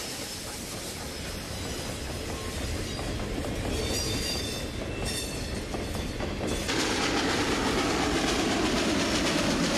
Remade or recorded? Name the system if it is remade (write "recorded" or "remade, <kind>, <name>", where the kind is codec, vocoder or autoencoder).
recorded